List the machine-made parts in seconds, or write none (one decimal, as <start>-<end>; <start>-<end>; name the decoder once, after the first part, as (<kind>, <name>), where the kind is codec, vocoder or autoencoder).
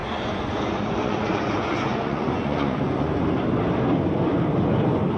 0.0-3.1 (vocoder, Vocos)